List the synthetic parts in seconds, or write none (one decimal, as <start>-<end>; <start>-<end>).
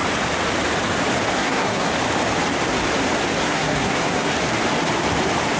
1.4-1.9; 3.4-4.3